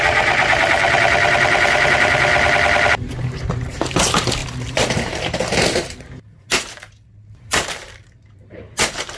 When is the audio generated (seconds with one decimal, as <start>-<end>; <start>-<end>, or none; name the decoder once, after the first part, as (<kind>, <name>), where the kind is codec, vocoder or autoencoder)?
0.0-2.3 (vocoder, BigVGAN v2); 2.9-9.2